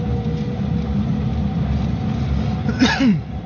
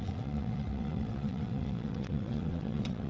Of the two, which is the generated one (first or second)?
second